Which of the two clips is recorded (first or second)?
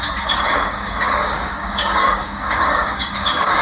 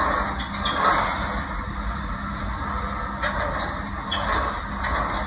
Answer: second